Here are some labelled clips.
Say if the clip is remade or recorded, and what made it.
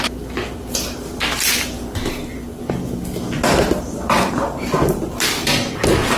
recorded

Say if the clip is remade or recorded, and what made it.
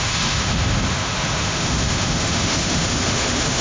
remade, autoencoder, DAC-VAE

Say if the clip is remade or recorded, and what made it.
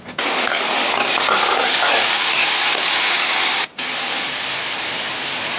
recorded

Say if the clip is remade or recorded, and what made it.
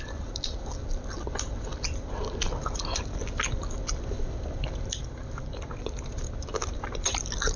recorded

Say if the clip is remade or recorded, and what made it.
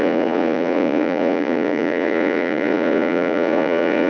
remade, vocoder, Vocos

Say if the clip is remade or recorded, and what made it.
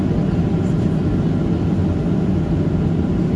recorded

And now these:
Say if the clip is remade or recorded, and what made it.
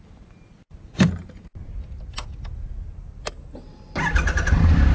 recorded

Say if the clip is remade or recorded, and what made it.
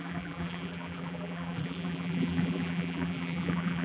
remade, vocoder, BigVGAN v2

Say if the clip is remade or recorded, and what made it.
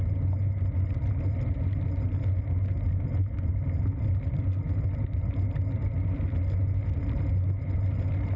recorded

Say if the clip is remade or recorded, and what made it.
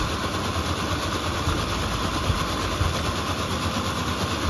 recorded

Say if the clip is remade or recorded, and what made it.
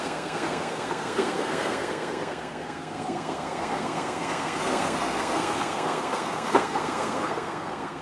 remade, codec, SNAC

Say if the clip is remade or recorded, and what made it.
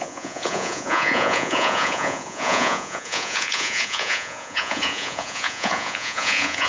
remade, vocoder, Vocos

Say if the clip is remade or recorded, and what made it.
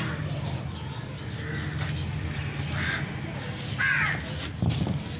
recorded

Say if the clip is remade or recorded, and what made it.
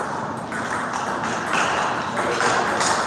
recorded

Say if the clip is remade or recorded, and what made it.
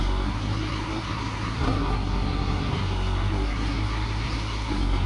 remade, codec, SNAC